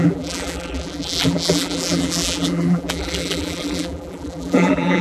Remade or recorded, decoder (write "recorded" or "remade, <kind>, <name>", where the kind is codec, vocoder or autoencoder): remade, vocoder, BigVGAN v2